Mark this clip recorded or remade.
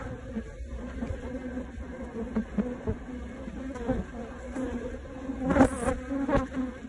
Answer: recorded